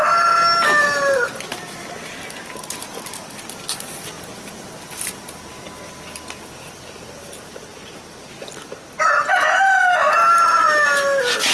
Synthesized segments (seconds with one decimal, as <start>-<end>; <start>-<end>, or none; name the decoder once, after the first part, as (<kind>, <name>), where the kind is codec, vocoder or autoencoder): 1.5-2.1 (vocoder, BigVGAN v2)